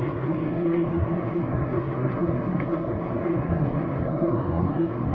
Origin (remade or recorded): remade